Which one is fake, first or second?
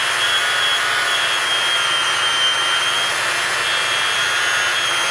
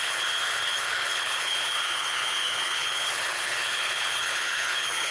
second